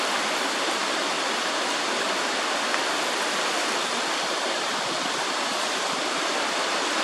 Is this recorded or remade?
remade